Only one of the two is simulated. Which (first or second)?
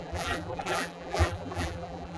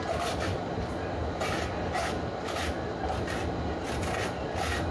first